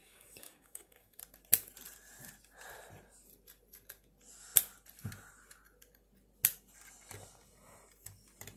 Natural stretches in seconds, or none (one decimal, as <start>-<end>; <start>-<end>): 1.2-8.6